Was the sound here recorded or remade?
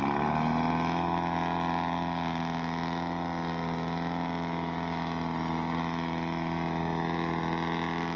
recorded